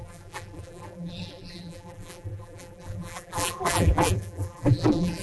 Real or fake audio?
fake